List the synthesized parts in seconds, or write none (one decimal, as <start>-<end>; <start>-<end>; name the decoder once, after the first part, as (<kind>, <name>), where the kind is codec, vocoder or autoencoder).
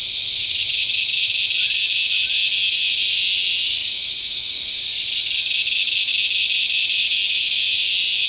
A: 3.8-4.8 (codec, DAC)